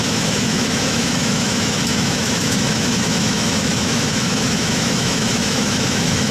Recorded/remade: remade